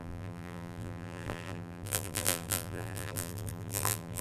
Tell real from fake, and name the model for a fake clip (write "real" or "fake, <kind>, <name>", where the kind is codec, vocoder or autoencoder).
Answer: fake, vocoder, BigVGAN v2